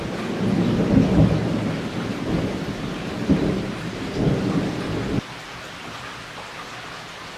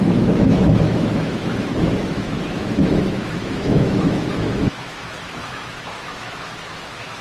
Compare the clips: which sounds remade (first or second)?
second